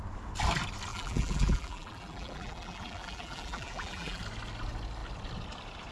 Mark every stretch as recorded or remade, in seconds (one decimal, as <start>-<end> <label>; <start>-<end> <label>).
0.0-0.9 recorded; 0.9-4.2 remade; 4.2-5.9 recorded